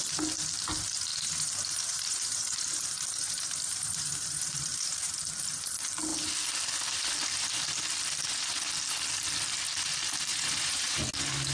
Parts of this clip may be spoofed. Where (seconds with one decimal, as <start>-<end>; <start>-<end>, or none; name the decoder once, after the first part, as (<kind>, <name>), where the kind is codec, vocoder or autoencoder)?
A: 1.1-5.1 (vocoder, BigVGAN v2); 10.3-11.0